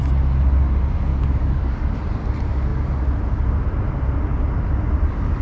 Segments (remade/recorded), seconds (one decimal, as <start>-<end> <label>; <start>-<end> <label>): 0.0-1.1 recorded; 1.1-2.0 remade; 2.0-5.4 recorded